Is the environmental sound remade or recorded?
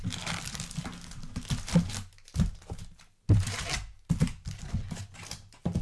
recorded